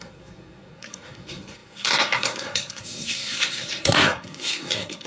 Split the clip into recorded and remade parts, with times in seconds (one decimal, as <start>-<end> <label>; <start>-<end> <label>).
0.0-5.1 remade